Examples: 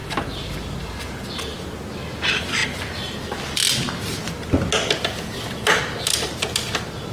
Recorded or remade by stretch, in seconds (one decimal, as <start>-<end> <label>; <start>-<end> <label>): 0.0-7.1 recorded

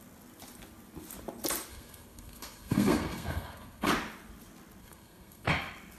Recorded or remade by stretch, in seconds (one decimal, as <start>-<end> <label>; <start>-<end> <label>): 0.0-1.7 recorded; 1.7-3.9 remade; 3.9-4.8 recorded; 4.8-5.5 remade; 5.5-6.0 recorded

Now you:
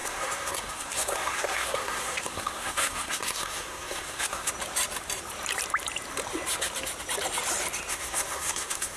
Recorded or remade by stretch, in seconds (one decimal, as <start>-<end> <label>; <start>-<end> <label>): 0.0-4.5 remade; 4.5-7.9 recorded; 7.9-9.0 remade